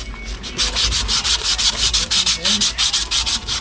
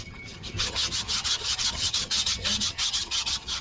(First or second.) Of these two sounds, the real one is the first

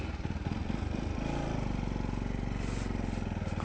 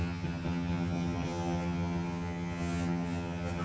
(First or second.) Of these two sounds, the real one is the first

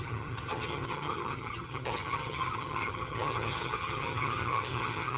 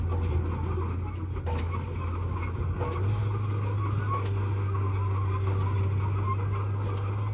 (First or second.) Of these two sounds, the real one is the second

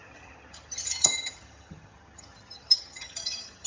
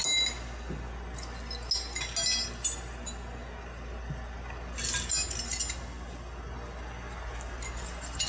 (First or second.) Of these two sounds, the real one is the second